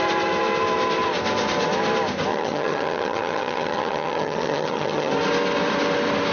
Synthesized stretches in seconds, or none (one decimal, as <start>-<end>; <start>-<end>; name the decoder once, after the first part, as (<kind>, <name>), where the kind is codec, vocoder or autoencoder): 2.3-5.1 (vocoder, HiFi-GAN)